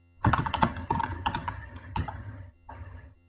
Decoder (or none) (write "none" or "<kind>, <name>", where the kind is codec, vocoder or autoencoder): vocoder, HiFi-GAN